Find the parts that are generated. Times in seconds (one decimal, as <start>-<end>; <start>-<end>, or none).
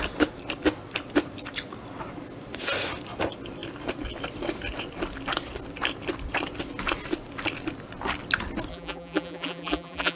8.7-10.2